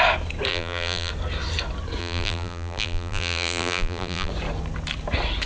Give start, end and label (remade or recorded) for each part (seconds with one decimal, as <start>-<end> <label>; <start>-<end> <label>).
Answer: 0.0-0.5 recorded; 0.5-1.1 remade; 1.1-2.0 recorded; 2.0-4.3 remade; 4.3-5.5 recorded